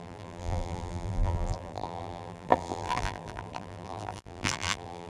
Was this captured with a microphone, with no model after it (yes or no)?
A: no